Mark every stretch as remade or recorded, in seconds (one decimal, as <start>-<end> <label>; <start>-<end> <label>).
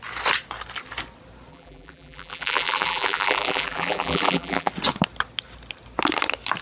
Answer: 0.0-1.5 recorded; 1.5-4.7 remade; 4.7-6.6 recorded